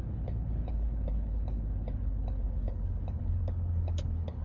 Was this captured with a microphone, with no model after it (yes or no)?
no